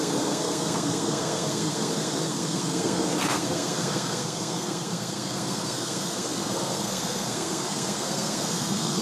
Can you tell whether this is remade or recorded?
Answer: remade